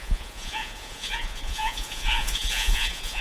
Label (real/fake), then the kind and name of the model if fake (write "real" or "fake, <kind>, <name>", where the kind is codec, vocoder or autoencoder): fake, vocoder, Vocos